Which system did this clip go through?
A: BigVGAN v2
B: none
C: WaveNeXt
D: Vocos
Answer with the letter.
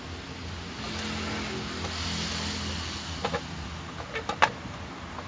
B